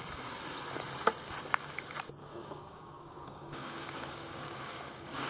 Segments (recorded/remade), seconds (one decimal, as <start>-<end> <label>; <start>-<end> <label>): 0.0-2.2 recorded; 2.2-5.3 remade